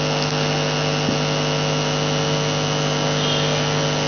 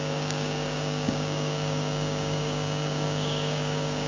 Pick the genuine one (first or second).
first